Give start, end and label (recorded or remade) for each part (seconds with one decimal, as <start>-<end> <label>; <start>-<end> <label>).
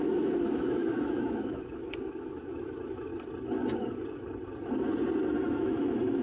0.0-3.1 remade; 3.1-5.3 recorded; 5.3-6.2 remade